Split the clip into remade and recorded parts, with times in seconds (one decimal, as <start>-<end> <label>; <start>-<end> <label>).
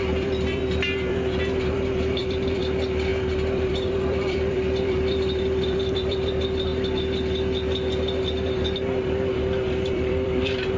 0.0-6.7 remade; 6.7-9.9 recorded; 9.9-10.8 remade